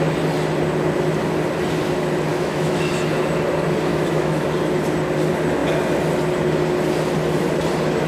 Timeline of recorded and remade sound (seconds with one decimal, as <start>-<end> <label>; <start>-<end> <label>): 0.0-2.3 recorded; 2.3-2.9 remade; 2.9-3.9 recorded; 3.9-4.5 remade; 4.5-8.1 recorded